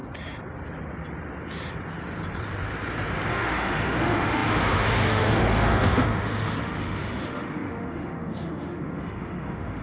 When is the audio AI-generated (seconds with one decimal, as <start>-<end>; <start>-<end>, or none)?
3.3-9.8